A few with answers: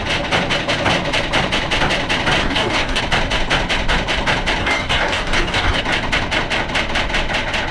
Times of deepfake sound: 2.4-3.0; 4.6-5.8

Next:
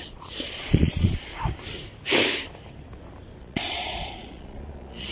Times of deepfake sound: 0.0-1.3; 3.4-5.1

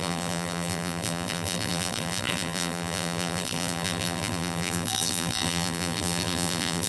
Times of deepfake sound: 0.0-6.9

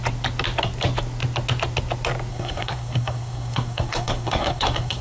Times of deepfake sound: 2.3-5.0

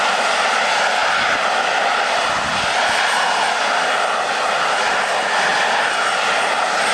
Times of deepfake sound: none